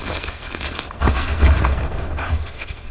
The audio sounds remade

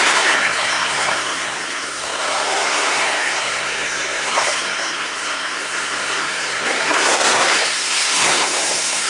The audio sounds remade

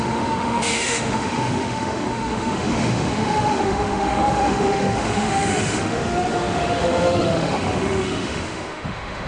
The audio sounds remade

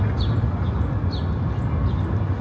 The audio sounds recorded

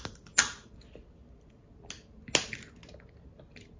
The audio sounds recorded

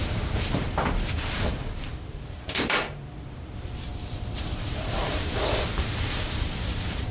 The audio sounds remade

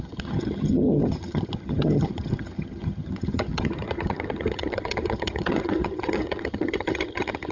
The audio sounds remade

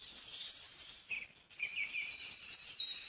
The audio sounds remade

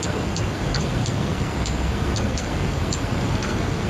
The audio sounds remade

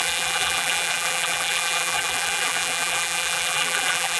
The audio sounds remade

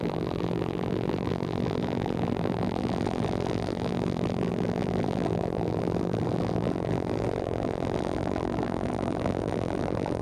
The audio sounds remade